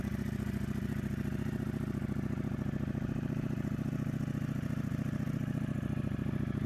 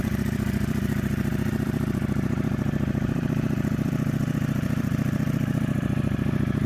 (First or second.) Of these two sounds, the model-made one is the second